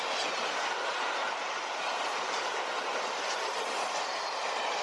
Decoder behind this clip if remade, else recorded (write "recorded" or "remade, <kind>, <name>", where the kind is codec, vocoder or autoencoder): recorded